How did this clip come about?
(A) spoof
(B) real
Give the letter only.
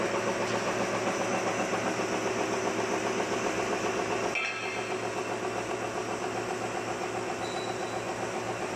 B